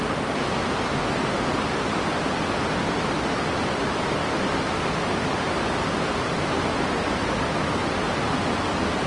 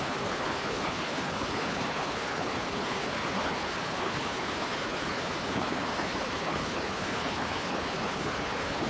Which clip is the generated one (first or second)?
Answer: second